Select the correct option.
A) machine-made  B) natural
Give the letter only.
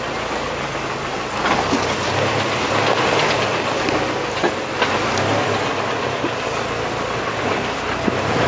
B